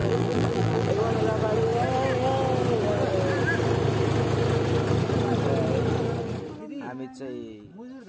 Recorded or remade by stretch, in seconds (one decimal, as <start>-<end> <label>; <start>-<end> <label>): 0.0-0.9 remade; 0.9-8.1 recorded